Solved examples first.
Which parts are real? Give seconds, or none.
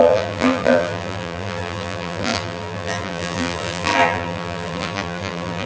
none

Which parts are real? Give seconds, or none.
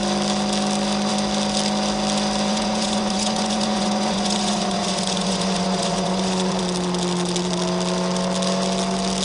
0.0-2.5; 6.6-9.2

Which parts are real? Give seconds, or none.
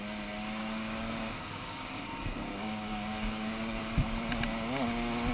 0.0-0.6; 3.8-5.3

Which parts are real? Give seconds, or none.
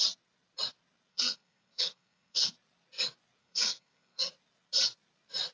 0.0-1.1; 2.5-3.4; 4.3-5.5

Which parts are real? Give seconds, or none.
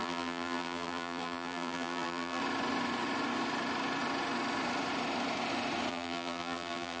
2.4-5.9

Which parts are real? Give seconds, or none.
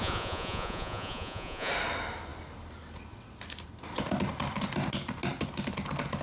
1.7-6.2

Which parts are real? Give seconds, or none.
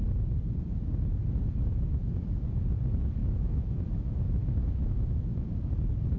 0.0-3.2; 5.6-6.2